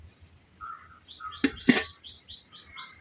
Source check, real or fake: real